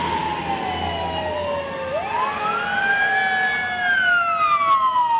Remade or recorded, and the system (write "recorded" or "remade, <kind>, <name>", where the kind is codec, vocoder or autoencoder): recorded